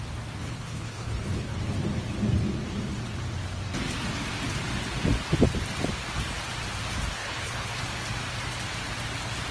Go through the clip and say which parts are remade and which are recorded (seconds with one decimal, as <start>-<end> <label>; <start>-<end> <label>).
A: 0.0-0.4 recorded; 0.4-1.6 remade; 1.6-7.2 recorded; 7.2-7.8 remade; 7.8-9.5 recorded